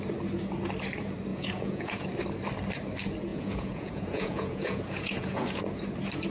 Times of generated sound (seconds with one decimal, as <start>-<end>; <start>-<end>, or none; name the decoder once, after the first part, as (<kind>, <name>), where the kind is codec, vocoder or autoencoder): 1.3-2.1 (vocoder, Vocos); 3.3-5.6